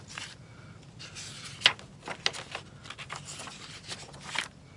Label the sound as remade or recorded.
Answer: recorded